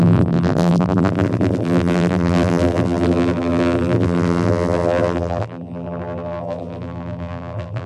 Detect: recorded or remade remade